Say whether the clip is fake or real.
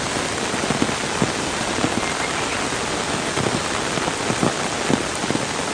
real